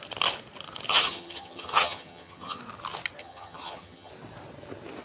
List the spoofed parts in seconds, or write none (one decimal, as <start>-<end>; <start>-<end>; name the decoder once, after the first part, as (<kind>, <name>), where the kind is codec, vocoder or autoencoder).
0.9-2.6 (vocoder, HiFi-GAN); 3.2-4.1